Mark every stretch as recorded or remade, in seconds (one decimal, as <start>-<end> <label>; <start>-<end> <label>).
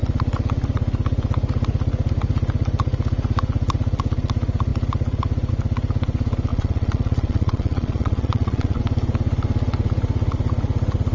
0.0-6.5 recorded; 6.5-8.8 remade; 8.8-11.1 recorded